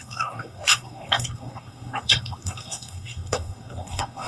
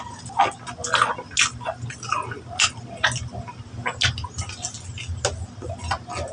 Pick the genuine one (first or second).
second